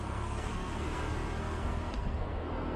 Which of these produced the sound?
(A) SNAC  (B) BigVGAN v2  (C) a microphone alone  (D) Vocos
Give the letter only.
A